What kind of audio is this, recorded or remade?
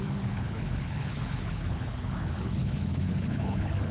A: remade